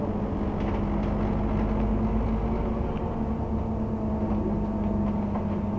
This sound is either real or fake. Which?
real